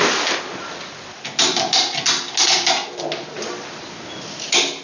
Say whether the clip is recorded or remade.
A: recorded